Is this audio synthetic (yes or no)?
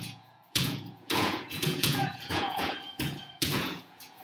yes